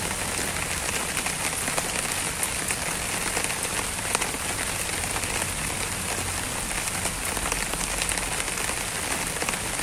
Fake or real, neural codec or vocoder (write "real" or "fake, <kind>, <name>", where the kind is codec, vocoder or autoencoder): real